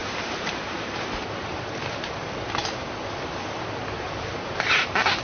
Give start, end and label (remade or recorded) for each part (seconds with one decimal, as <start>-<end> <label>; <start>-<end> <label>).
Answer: 0.0-1.5 remade; 1.5-5.2 recorded